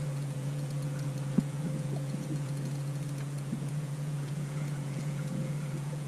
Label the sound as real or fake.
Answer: fake